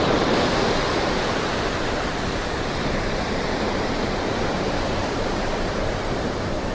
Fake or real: fake